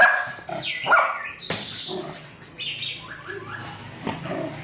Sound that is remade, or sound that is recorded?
recorded